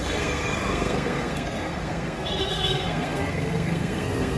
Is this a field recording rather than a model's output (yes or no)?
no